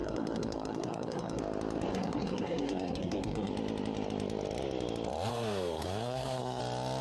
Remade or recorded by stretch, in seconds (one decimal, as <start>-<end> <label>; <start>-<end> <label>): 0.0-1.4 remade; 1.4-1.9 recorded; 1.9-3.5 remade; 3.5-5.3 recorded; 5.3-6.6 remade; 6.6-7.0 recorded